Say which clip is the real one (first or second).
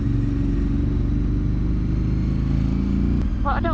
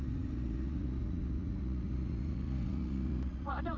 first